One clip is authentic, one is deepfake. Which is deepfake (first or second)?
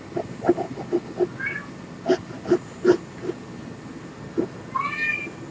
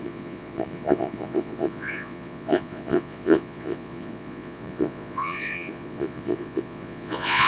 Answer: second